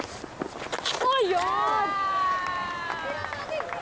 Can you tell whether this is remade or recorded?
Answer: recorded